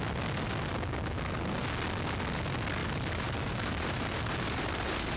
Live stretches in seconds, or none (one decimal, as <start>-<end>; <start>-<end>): 0.0-2.8